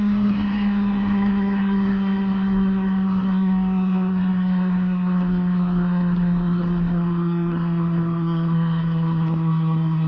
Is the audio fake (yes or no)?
yes